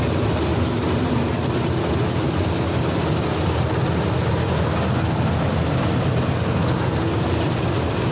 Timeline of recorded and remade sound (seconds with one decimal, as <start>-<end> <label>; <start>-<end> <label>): 0.0-8.1 recorded